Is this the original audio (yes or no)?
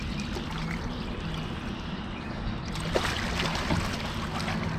yes